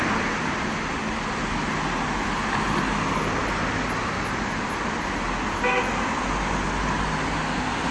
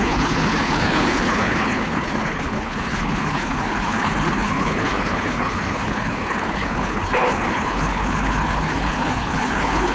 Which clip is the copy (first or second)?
second